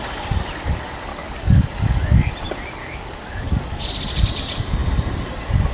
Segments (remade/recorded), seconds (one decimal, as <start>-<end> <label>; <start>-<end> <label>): 0.0-1.1 recorded; 1.1-2.3 remade; 2.3-2.8 recorded; 2.8-3.4 remade; 3.4-5.7 recorded

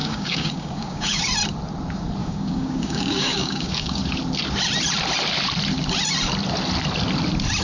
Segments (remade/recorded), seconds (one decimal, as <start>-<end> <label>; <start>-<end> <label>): 0.0-1.2 remade; 1.2-2.2 recorded; 2.2-4.0 remade; 4.0-7.6 recorded